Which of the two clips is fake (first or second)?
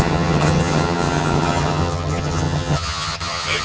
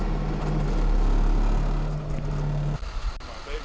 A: first